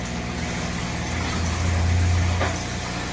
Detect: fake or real real